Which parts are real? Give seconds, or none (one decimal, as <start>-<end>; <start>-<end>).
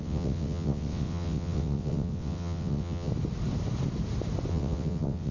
3.1-4.5